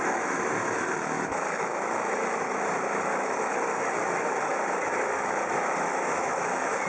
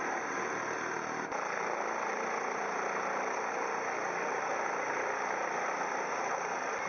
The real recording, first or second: second